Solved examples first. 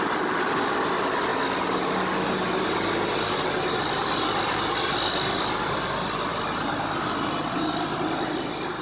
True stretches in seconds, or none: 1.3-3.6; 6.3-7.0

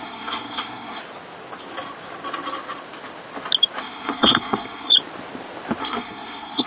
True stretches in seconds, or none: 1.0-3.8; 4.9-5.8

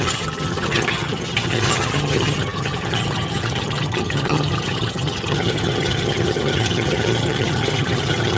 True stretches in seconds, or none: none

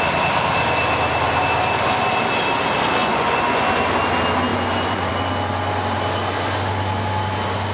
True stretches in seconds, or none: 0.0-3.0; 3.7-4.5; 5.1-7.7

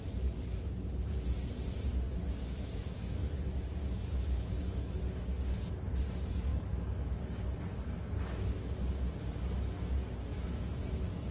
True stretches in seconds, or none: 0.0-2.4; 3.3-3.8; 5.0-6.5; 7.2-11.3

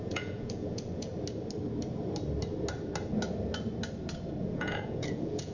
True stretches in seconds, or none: 1.1-4.4

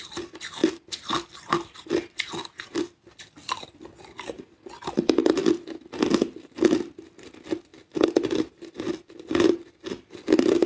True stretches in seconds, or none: 0.0-10.7

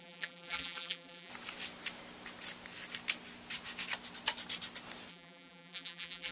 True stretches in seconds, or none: 1.3-5.1